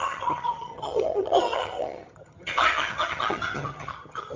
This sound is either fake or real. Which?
fake